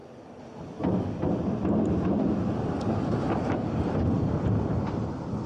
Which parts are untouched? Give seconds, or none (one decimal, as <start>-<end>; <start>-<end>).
0.0-5.5